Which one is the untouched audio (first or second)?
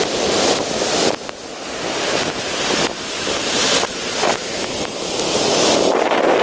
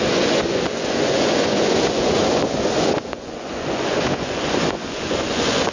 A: first